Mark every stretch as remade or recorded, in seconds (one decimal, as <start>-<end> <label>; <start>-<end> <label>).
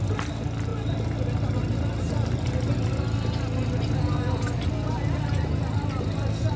0.0-6.6 recorded